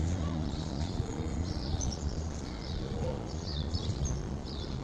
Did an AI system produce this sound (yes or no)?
yes